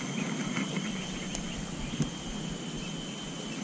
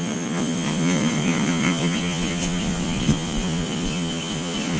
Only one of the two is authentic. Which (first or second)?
first